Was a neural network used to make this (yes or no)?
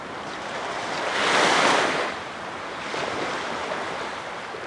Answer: no